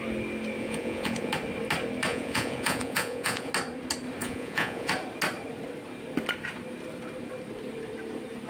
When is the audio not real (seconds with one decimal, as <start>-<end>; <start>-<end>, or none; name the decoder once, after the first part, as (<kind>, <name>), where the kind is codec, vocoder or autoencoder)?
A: 0.6-1.3 (vocoder, Vocos); 2.1-3.5; 4.2-4.9